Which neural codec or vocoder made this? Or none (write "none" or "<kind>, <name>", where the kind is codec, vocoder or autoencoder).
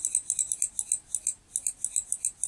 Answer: none